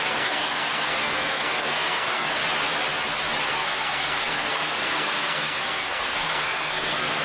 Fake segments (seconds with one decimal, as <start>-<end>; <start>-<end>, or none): 0.0-2.4; 3.5-7.2